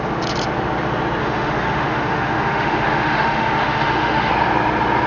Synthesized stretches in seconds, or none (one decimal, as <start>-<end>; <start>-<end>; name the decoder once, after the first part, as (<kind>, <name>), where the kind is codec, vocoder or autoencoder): 1.2-4.3 (autoencoder, DAC-VAE)